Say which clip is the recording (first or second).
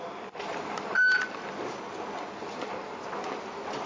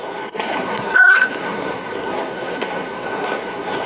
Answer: first